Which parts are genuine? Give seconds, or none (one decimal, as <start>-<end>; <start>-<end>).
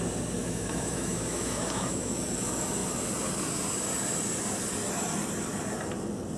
0.0-0.4; 2.1-6.4